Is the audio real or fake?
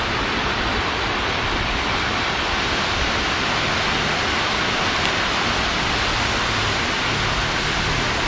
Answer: real